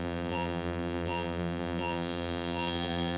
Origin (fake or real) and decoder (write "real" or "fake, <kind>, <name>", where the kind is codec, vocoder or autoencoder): fake, vocoder, BigVGAN v2